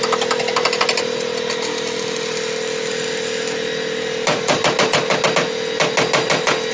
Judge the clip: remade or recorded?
recorded